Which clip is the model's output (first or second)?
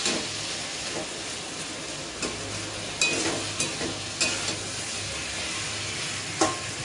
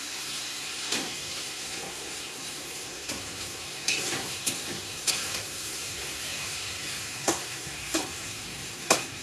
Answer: second